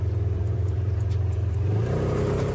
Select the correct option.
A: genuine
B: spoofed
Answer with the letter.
B